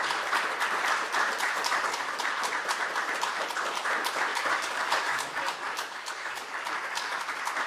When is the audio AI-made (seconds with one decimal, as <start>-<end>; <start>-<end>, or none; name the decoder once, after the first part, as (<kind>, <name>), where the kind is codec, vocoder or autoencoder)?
1.7-2.2 (codec, DAC); 4.3-7.2